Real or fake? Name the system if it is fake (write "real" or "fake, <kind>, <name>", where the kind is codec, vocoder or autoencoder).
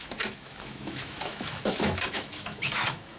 fake, autoencoder, DAC-VAE